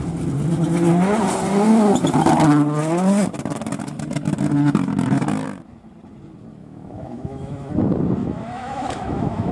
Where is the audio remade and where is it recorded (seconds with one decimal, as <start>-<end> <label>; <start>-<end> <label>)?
0.0-6.6 recorded; 6.6-7.7 remade; 7.7-8.2 recorded; 8.2-9.5 remade